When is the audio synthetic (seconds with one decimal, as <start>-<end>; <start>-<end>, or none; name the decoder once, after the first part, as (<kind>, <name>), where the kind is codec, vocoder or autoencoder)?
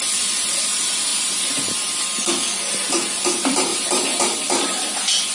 0.0-5.3 (vocoder, BigVGAN v2)